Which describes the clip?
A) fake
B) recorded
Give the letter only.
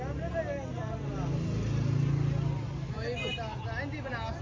B